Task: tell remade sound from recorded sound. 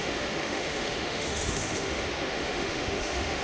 remade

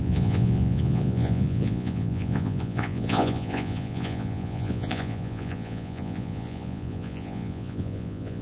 remade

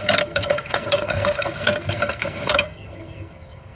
remade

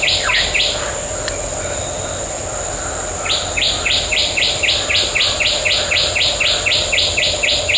recorded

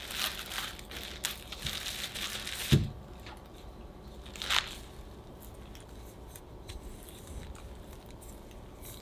recorded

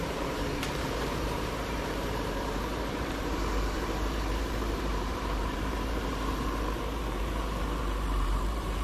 remade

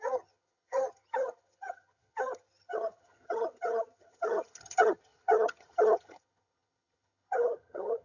remade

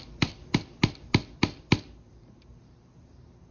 remade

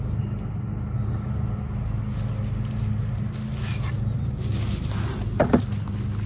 recorded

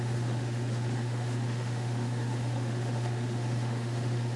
remade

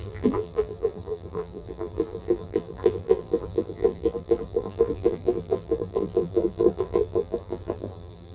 remade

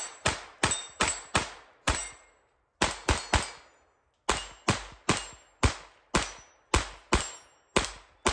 recorded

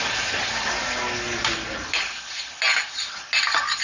recorded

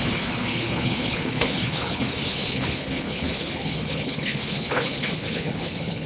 remade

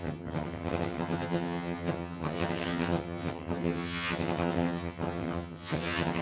remade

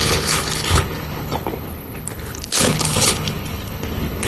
remade